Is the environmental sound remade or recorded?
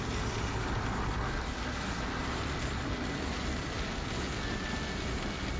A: recorded